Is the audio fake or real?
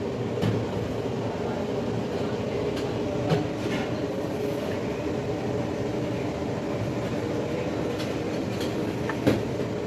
real